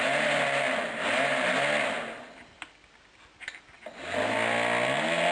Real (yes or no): yes